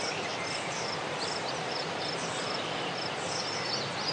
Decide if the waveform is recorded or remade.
recorded